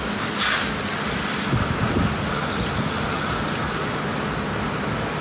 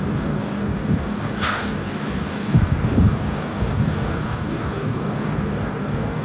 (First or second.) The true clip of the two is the first